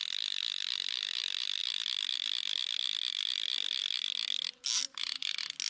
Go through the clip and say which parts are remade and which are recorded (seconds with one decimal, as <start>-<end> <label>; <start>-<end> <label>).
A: 0.0-5.7 recorded